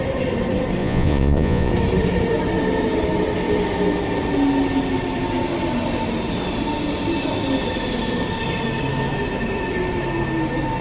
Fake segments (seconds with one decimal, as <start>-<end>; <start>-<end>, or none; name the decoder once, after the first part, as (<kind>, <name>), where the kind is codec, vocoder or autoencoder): 0.8-1.7 (vocoder, Vocos)